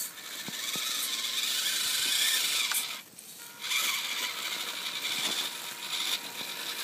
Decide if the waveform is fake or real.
real